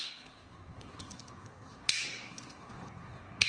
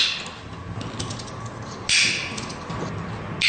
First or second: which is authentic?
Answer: second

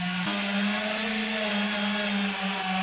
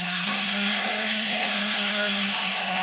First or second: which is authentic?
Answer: first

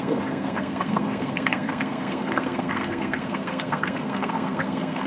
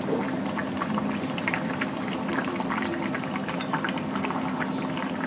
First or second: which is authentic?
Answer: second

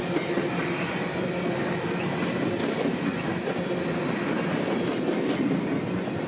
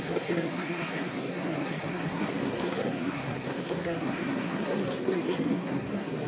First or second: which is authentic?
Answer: first